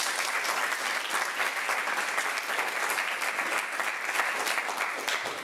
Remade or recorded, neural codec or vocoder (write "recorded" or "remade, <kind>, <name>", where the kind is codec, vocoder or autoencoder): recorded